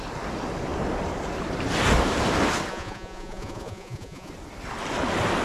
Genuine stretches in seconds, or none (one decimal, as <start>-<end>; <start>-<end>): 0.0-2.7; 4.3-5.4